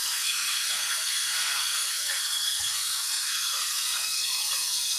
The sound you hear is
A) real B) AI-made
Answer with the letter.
B